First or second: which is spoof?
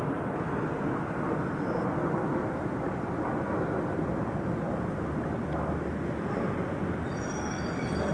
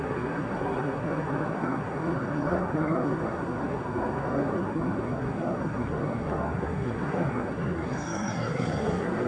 second